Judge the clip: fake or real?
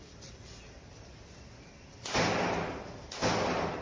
real